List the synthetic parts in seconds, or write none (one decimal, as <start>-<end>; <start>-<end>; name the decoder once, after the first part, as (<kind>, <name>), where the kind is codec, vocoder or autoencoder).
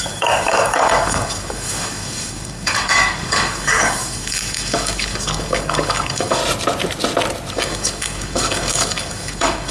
0.0-6.4 (codec, DAC); 7.5-9.7